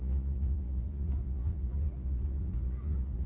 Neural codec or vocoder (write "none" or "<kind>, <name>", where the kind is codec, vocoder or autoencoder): vocoder, Vocos